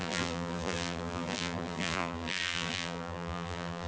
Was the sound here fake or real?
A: fake